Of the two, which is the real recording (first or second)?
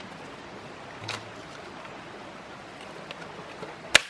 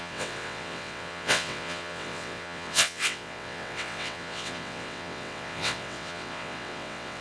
first